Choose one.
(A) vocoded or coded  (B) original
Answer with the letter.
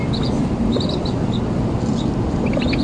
B